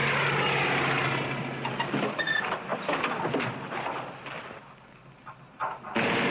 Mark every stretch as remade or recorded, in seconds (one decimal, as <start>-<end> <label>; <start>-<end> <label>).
0.0-6.3 recorded